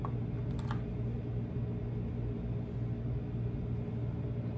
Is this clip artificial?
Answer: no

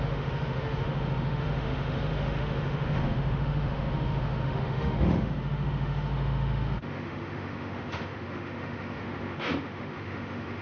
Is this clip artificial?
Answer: yes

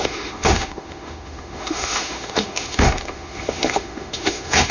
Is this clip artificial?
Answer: yes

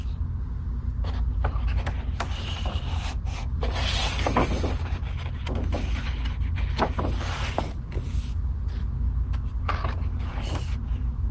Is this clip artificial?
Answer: no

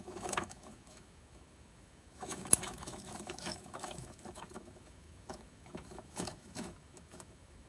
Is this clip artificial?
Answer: yes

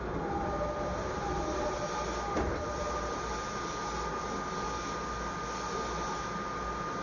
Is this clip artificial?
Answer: no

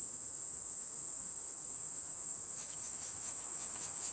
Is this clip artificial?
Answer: yes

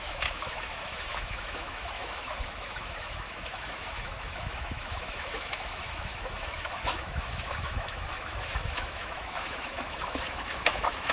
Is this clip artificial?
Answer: yes